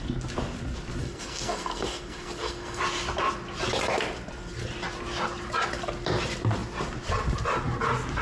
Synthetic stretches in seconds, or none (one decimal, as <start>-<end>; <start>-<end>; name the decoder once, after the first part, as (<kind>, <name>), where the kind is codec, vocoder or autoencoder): 1.0-2.8 (codec, SNAC)

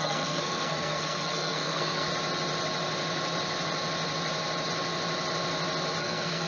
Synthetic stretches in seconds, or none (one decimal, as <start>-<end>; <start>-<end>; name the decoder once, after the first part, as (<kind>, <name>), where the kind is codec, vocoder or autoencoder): 0.0-2.1 (codec, SNAC); 6.0-6.5

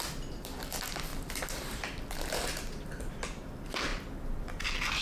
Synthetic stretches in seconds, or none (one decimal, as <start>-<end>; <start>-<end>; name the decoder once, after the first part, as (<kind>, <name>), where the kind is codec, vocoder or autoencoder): none